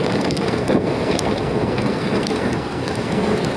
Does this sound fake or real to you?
fake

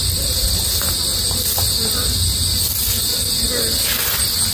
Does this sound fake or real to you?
real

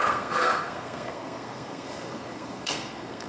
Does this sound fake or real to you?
fake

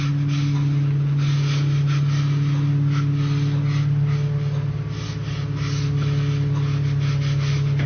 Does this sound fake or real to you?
real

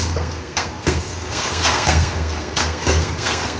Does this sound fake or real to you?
fake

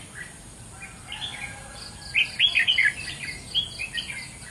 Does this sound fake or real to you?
real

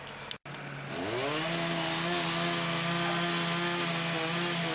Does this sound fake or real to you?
real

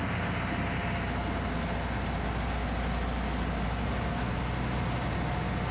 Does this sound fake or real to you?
real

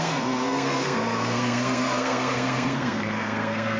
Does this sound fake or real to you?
fake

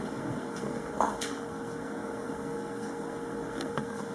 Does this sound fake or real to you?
fake